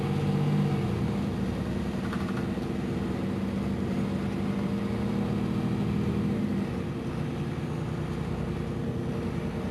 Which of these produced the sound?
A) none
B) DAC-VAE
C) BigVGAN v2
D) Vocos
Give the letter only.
A